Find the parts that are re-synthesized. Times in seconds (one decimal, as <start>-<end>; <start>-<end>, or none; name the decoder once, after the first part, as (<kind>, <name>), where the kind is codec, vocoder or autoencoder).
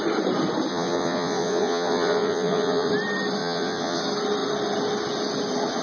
0.7-2.9 (vocoder, Vocos); 3.4-4.0